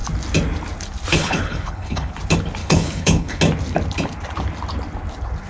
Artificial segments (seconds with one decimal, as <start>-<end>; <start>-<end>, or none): 1.1-2.1; 2.6-3.4

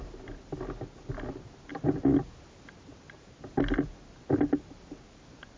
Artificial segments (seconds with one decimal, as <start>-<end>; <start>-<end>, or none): none

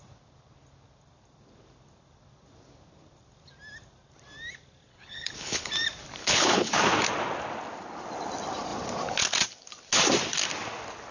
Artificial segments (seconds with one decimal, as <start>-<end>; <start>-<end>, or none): 4.9-5.7; 6.2-6.8

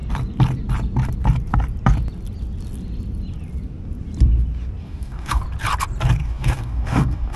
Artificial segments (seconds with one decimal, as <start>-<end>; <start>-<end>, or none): 4.8-5.4; 6.2-7.4